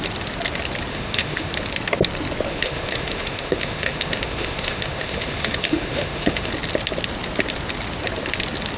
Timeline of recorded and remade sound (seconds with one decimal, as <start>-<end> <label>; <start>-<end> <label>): 0.0-0.9 recorded; 0.9-1.5 remade; 1.5-2.5 recorded; 2.5-6.5 remade; 6.5-8.8 recorded